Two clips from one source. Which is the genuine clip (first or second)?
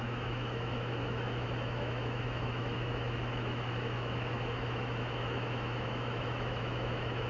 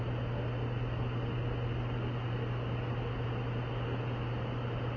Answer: second